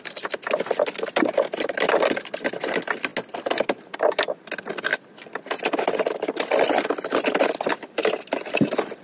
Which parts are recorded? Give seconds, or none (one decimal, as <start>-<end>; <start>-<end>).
0.0-9.0